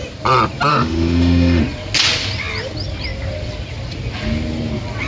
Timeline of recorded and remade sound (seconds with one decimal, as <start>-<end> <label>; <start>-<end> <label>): 0.0-0.7 recorded; 0.7-1.6 remade; 1.6-5.1 recorded